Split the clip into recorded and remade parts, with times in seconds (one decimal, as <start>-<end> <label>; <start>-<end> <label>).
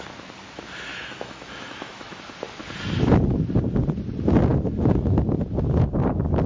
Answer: 0.0-0.9 recorded; 0.9-2.2 remade; 2.2-6.5 recorded